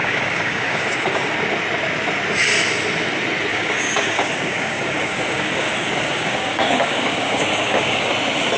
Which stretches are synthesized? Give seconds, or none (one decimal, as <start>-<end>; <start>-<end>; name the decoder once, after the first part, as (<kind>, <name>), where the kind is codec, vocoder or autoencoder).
0.0-1.3 (codec, DAC); 3.5-8.1